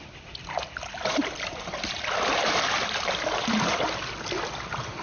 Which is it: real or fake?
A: real